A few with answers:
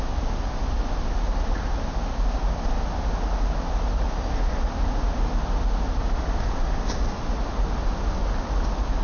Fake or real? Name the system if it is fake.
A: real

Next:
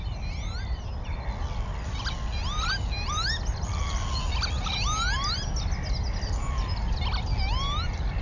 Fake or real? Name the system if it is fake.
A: real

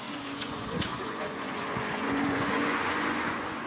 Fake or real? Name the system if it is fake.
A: fake, vocoder, Vocos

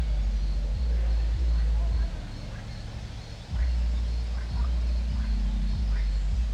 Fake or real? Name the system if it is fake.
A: real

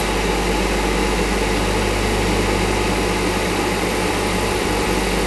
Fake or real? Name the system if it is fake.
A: real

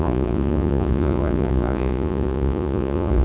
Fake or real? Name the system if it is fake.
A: fake, vocoder, Vocos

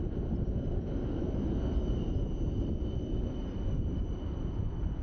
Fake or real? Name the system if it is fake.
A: real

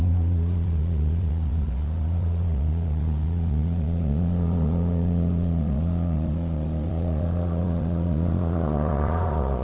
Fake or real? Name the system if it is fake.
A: fake, vocoder, Vocos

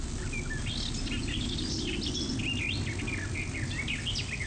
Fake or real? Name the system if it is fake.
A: real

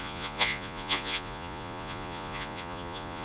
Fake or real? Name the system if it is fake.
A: fake, vocoder, Vocos